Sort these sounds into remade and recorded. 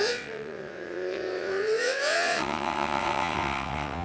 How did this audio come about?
remade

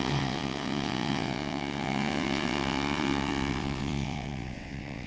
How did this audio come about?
remade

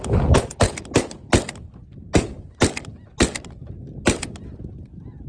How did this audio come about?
recorded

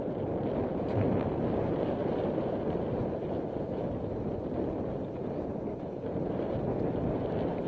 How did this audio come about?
recorded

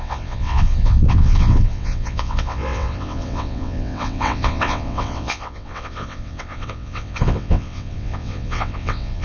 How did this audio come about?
remade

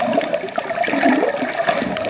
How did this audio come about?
recorded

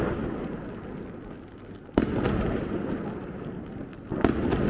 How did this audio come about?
recorded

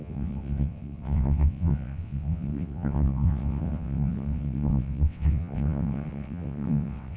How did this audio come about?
remade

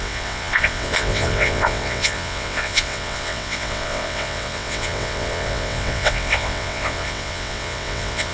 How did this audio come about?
remade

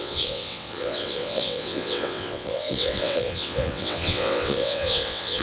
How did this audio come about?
remade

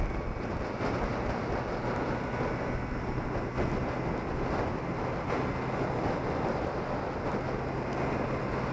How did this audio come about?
recorded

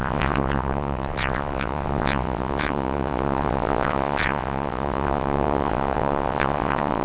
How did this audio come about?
remade